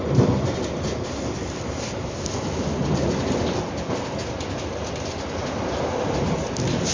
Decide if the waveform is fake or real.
real